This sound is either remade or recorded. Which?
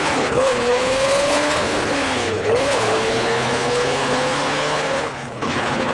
remade